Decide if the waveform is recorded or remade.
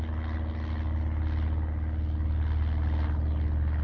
recorded